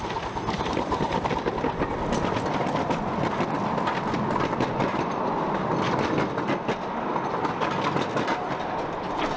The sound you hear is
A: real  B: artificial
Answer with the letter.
A